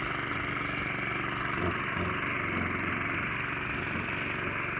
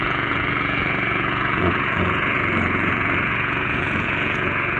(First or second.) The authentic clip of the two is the first